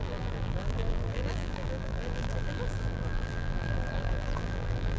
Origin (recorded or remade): remade